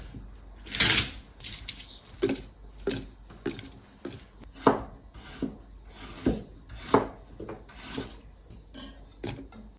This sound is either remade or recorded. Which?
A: recorded